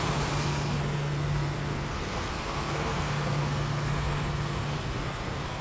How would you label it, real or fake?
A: fake